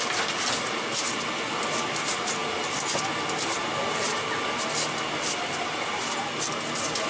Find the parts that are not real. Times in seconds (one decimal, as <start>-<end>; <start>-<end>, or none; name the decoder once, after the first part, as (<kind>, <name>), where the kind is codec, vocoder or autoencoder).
none